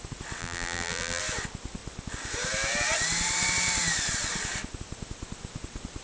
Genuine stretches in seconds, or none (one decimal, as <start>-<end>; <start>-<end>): 0.0-0.4; 1.2-6.0

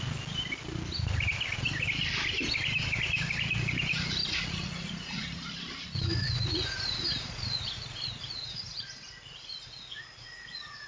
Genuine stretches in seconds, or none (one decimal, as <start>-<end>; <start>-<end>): 0.0-4.2; 5.4-6.1

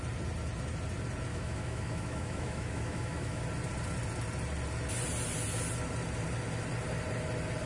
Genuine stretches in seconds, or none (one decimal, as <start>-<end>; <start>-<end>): 0.0-1.3; 3.4-7.7

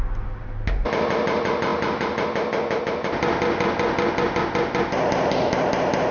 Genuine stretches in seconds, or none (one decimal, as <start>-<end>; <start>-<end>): 0.0-6.1

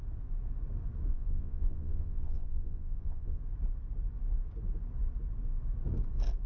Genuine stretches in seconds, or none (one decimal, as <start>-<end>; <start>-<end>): 0.0-1.1; 3.4-6.5